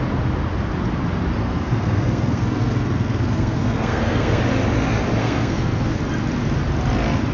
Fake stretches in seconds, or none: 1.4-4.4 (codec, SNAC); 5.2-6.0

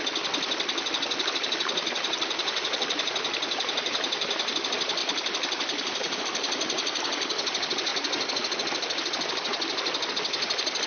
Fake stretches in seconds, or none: 1.8-4.5 (vocoder, BigVGAN v2); 5.0-6.2

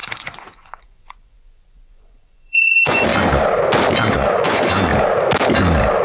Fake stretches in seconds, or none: 0.0-3.1 (vocoder, Vocos); 4.1-4.9